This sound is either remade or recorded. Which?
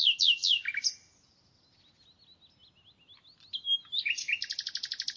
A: recorded